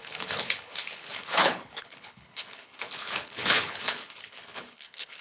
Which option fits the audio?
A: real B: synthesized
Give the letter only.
B